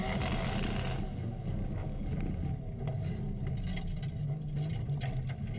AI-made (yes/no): no